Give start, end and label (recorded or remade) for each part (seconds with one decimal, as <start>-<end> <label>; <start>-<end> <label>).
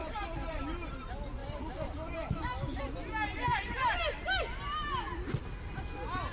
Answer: 0.0-0.6 remade; 0.6-1.4 recorded; 1.4-2.8 remade; 2.8-3.5 recorded; 3.5-4.2 remade; 4.2-5.1 recorded; 5.1-5.8 remade; 5.8-6.3 recorded